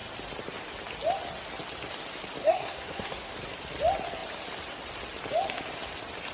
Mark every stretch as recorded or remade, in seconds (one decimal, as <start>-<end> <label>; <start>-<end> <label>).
0.0-2.4 recorded; 2.4-3.3 remade; 3.3-6.3 recorded